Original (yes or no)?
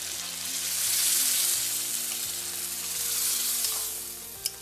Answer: yes